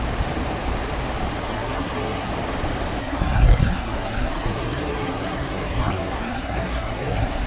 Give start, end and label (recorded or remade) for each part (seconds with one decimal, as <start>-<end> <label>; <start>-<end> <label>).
0.0-1.4 recorded; 1.4-2.3 remade; 2.3-3.0 recorded; 3.0-7.5 remade